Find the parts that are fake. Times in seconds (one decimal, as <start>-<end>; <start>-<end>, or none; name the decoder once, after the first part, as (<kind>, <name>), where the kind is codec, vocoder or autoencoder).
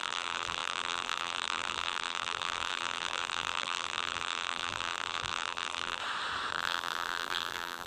0.0-6.0 (vocoder, BigVGAN v2); 6.5-7.9